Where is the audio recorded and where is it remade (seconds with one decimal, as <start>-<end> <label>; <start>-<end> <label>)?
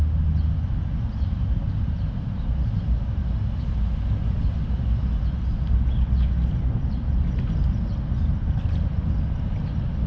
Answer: 0.0-0.6 recorded; 0.6-3.2 remade; 3.2-10.1 recorded